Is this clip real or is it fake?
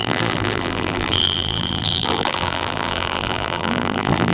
fake